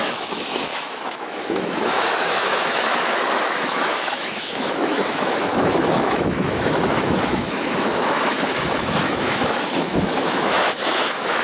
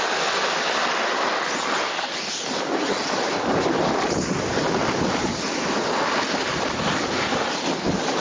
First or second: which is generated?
first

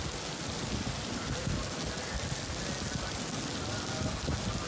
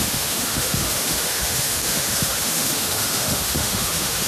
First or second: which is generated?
second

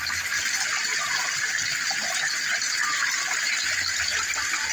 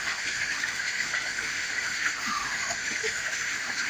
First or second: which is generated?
second